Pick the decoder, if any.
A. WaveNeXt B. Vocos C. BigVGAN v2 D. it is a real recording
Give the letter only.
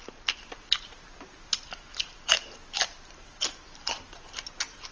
D